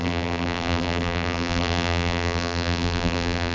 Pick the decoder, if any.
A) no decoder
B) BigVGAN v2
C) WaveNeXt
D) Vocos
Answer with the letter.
B